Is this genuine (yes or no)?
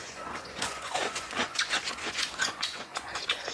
no